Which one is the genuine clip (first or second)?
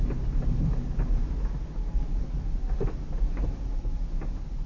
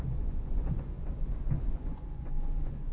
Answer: first